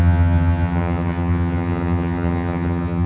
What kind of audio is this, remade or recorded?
remade